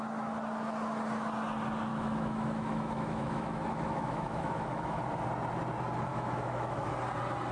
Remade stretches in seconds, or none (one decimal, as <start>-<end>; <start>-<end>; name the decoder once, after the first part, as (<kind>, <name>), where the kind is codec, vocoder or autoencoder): 1.9-5.0 (autoencoder, DAC-VAE); 6.1-6.9